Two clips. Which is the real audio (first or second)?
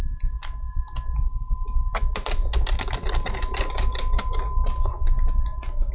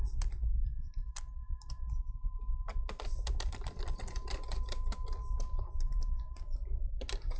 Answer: first